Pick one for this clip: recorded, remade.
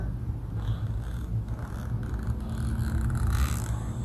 recorded